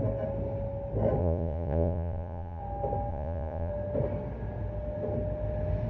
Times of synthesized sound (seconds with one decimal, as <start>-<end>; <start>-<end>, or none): 1.2-2.6; 3.1-3.7